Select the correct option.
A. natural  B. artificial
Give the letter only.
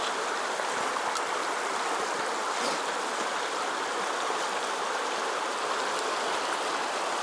A